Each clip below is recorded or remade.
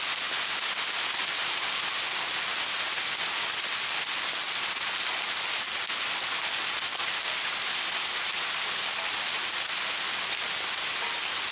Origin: recorded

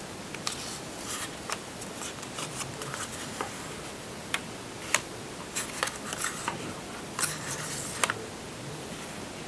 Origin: recorded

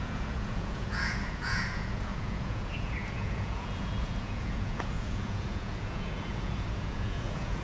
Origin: remade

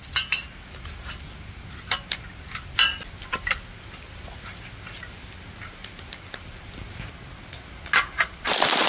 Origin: recorded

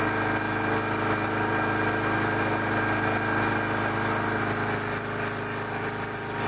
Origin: recorded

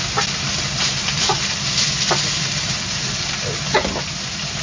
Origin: recorded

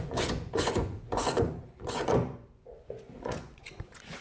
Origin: remade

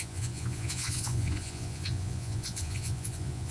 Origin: remade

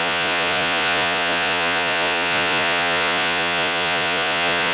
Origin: remade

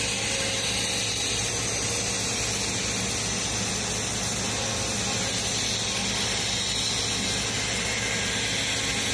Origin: recorded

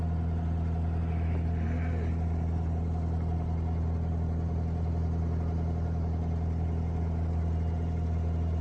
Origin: recorded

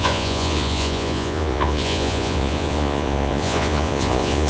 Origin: remade